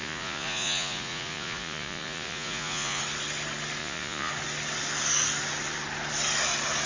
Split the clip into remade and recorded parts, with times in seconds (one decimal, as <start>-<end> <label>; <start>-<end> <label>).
0.0-3.0 remade; 3.0-3.8 recorded; 3.8-4.3 remade; 4.3-6.9 recorded